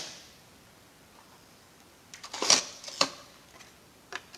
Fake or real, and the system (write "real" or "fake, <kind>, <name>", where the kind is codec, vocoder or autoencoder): real